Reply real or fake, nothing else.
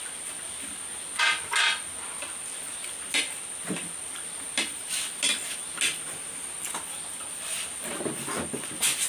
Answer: real